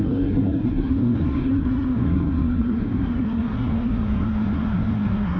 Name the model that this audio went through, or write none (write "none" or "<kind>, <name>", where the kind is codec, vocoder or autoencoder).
codec, SNAC